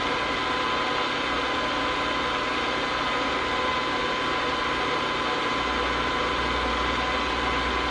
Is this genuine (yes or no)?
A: yes